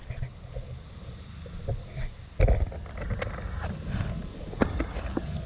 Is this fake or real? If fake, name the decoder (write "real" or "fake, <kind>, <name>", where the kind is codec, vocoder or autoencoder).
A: real